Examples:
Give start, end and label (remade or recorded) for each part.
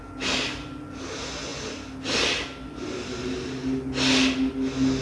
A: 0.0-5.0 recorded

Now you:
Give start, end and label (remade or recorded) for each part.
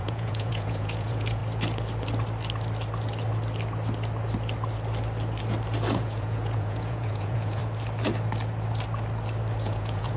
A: 0.0-1.4 remade; 1.4-5.9 recorded; 5.9-7.6 remade; 7.6-9.6 recorded; 9.6-10.2 remade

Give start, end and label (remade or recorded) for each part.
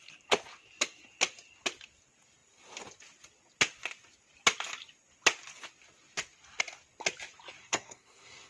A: 0.0-7.6 recorded; 7.6-8.5 remade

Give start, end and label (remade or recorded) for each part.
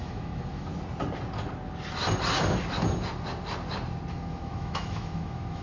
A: 0.0-0.7 remade; 0.7-4.1 recorded; 4.1-5.6 remade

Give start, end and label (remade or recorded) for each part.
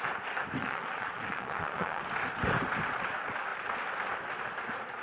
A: 0.0-0.6 recorded; 0.6-2.0 remade; 2.0-5.0 recorded